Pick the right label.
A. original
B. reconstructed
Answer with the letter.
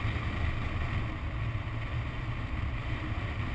A